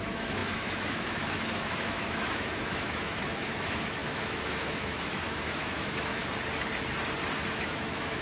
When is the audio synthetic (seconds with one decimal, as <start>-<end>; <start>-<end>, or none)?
0.0-6.2; 7.5-8.2